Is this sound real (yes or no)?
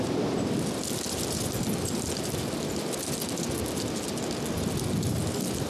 yes